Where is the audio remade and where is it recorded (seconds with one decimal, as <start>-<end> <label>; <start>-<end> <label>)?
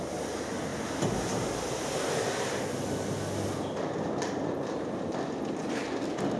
0.0-6.4 recorded